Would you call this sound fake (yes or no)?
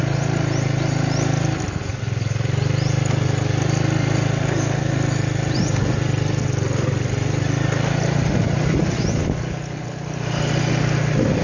no